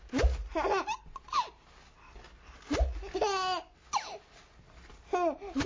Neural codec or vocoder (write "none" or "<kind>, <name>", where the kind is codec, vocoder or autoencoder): none